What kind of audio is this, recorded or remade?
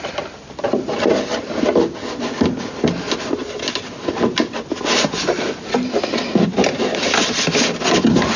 recorded